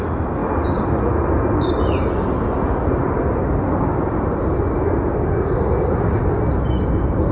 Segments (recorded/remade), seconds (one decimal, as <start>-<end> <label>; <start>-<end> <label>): 0.0-7.3 recorded